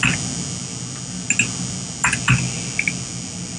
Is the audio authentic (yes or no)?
yes